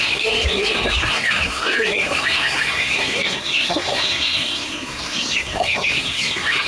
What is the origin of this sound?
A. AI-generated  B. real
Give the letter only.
A